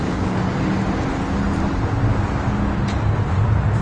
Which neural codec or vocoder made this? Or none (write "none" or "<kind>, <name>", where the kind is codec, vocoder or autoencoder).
none